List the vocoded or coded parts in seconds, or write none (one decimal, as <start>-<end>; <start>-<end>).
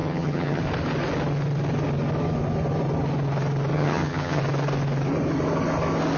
0.0-0.6; 3.7-4.4